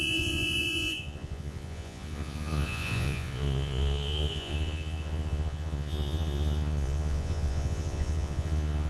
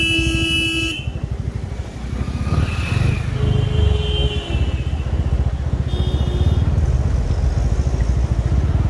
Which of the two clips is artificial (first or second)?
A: first